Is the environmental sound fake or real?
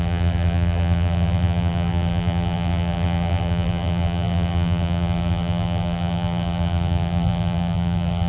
fake